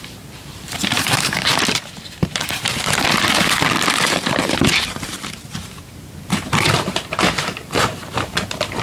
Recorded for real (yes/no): no